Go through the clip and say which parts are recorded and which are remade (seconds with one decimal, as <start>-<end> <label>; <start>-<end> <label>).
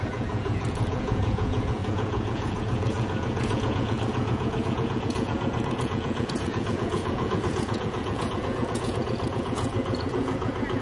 0.0-10.8 remade